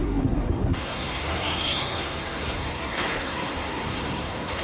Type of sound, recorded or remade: remade